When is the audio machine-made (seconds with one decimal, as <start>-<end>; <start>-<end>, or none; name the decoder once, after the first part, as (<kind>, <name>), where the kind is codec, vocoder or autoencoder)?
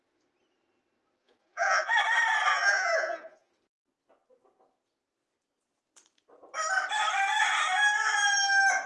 1.2-1.9 (vocoder, Vocos); 2.5-3.5